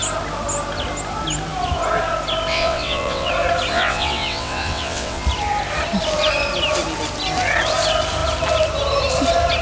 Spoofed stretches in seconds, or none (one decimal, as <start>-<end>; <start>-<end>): 2.5-3.3; 3.7-5.2